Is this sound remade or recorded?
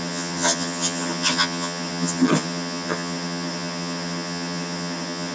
remade